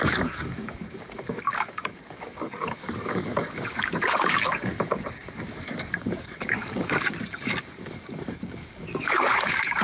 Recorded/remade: remade